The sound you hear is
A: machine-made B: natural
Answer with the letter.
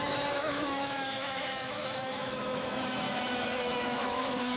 A